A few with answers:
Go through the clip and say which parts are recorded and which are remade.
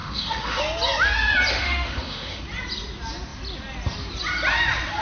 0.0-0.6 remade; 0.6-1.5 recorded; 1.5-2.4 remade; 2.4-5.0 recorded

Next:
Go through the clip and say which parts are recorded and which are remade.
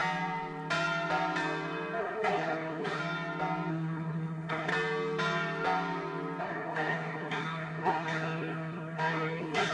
0.0-2.0 recorded; 2.0-3.0 remade; 3.0-3.7 recorded; 3.7-4.7 remade; 4.7-6.4 recorded; 6.4-9.7 remade